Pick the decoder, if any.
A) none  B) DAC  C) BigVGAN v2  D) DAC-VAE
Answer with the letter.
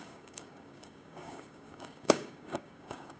B